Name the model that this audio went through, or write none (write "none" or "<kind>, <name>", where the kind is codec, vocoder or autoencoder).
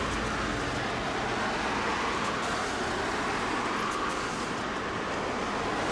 none